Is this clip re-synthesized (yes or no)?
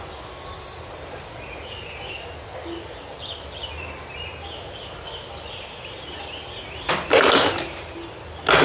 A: no